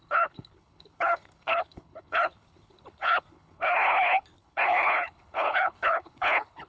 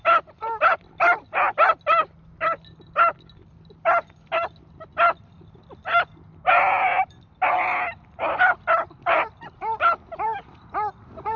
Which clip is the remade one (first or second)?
first